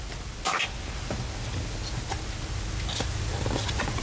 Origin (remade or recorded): recorded